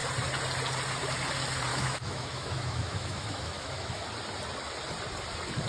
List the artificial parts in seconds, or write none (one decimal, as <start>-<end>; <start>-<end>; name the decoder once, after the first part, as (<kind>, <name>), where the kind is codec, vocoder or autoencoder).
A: 1.7-4.1 (autoencoder, DAC-VAE)